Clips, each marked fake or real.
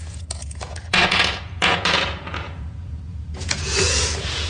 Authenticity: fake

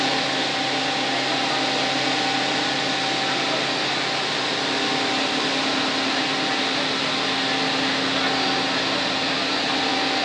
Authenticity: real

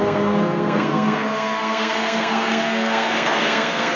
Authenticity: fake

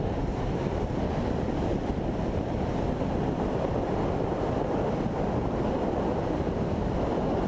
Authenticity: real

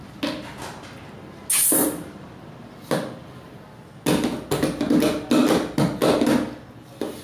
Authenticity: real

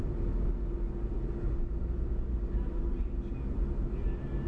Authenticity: real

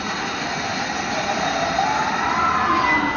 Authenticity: real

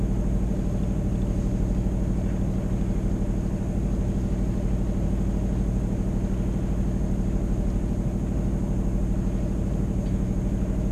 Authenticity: real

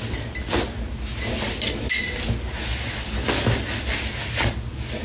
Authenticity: real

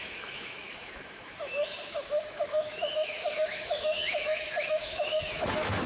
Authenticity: fake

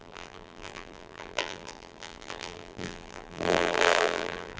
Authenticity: fake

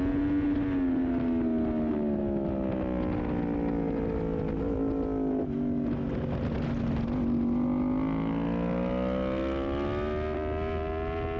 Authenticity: real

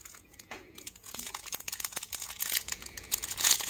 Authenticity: fake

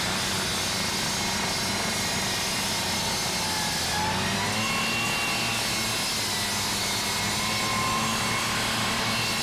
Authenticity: real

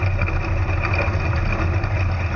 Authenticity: real